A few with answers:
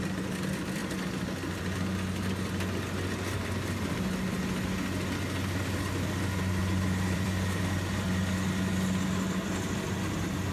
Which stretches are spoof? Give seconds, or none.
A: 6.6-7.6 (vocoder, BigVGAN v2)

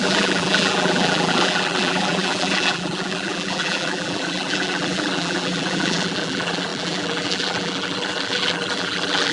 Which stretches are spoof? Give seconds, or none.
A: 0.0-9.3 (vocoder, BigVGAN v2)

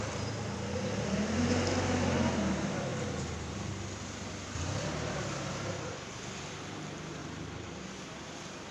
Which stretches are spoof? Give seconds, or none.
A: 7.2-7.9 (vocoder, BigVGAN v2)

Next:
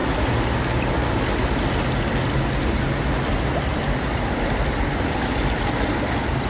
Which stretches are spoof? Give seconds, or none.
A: none

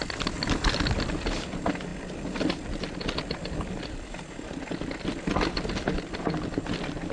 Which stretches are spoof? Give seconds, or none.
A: none

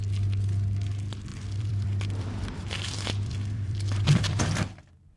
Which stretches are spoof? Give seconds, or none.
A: 1.3-4.4 (vocoder, BigVGAN v2)